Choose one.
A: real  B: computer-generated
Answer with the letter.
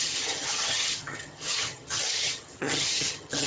B